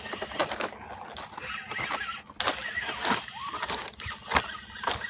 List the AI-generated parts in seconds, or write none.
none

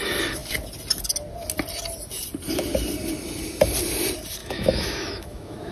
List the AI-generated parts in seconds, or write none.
4.4-5.7 (autoencoder, DAC-VAE)

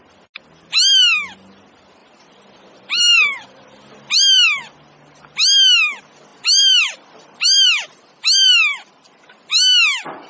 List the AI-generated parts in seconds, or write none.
2.0-4.7 (vocoder, BigVGAN v2); 6.3-8.9